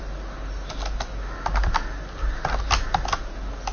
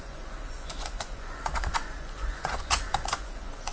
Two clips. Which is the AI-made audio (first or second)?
second